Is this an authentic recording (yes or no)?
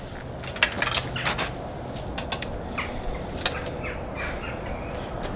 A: yes